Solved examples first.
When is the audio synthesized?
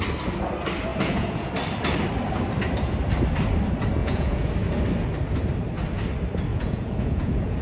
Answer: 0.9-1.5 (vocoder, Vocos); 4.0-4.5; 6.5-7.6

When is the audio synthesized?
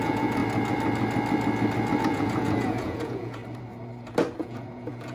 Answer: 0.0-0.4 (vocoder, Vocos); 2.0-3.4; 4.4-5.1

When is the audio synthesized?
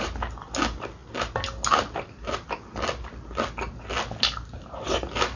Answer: none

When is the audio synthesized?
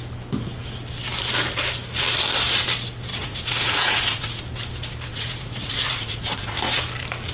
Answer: 3.1-4.4 (vocoder, Vocos); 5.1-6.6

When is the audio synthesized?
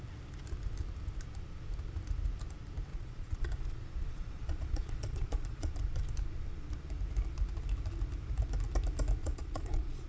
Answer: 2.9-3.4 (vocoder, Vocos); 4.0-5.7; 9.2-10.1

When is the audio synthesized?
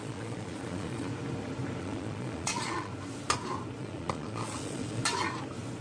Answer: 0.0-1.1 (vocoder, Vocos); 1.8-2.9; 3.8-5.0